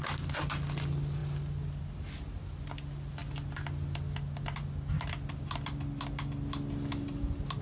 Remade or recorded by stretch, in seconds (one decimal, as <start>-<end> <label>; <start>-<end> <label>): 0.0-7.6 recorded